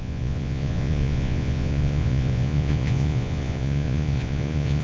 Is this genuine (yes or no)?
no